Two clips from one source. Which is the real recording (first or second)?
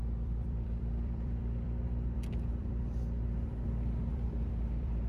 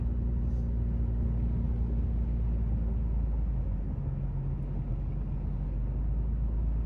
second